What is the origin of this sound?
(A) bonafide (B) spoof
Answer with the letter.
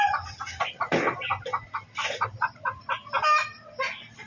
A